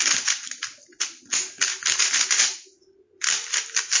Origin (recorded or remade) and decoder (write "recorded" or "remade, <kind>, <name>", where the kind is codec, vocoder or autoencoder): recorded